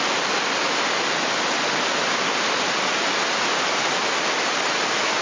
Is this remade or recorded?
recorded